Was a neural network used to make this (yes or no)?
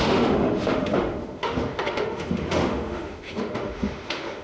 yes